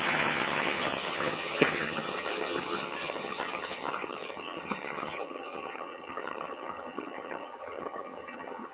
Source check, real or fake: fake